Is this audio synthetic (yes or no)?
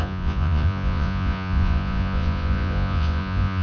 yes